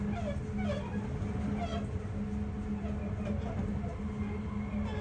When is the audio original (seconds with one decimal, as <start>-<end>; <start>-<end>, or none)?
0.0-5.0